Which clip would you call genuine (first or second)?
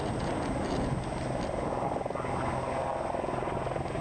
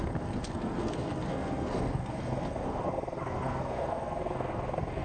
first